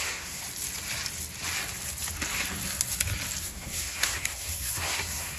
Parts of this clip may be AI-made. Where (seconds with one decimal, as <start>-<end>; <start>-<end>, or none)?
0.0-0.4; 3.4-5.4